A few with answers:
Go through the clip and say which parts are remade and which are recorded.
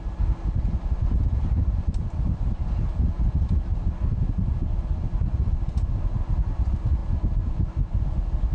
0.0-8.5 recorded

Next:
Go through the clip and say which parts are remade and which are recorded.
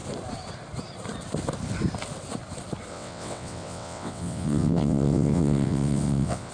0.0-2.9 recorded; 2.9-6.5 remade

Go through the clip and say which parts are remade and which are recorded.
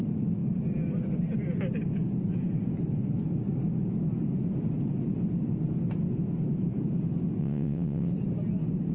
0.0-7.4 recorded; 7.4-8.1 remade; 8.1-8.9 recorded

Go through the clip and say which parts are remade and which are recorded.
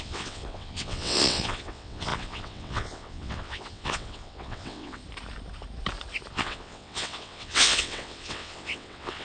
0.0-5.0 remade; 5.0-6.3 recorded; 6.3-9.2 remade